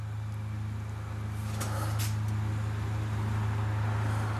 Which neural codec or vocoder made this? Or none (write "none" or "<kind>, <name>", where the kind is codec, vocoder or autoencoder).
none